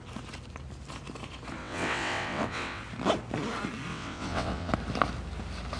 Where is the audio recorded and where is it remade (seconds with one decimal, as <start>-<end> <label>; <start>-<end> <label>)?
0.0-1.6 recorded; 1.6-2.8 remade; 2.8-3.9 recorded; 3.9-4.7 remade; 4.7-5.8 recorded